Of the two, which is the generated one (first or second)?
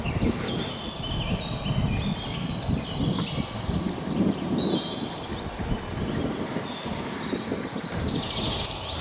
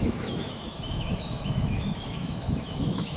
second